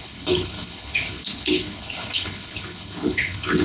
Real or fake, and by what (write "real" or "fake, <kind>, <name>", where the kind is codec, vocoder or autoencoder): fake, codec, HILCodec